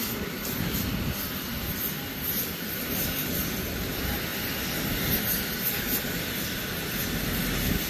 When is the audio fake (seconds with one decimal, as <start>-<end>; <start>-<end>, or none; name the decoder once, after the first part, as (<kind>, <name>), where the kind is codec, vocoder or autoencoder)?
1.5-3.3 (vocoder, BigVGAN v2); 4.3-6.2